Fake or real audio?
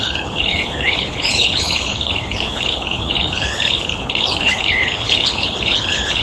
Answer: fake